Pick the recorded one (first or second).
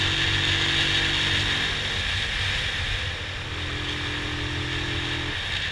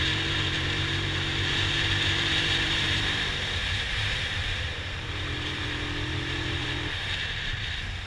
first